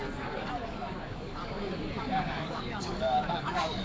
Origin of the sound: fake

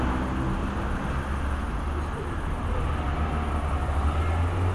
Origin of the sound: real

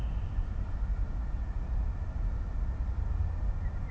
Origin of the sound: real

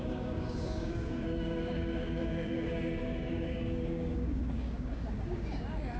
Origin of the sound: fake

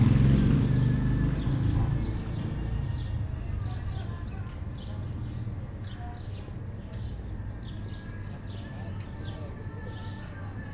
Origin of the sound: real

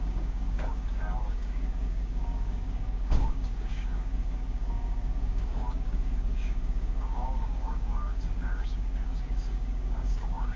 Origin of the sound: fake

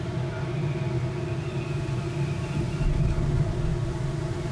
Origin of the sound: real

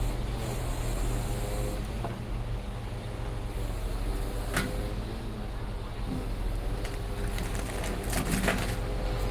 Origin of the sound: real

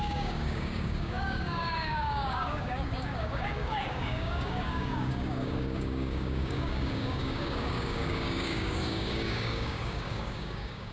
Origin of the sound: fake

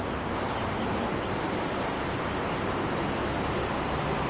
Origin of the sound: real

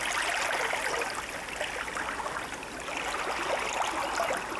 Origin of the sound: real